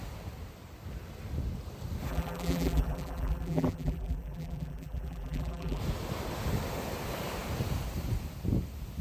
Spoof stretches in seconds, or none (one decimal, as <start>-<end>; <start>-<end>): 2.1-5.8